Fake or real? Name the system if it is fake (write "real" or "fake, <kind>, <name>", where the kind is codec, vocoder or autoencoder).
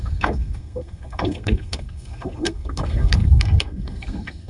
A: fake, codec, SNAC